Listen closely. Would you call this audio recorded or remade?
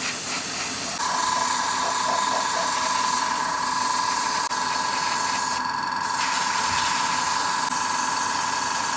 recorded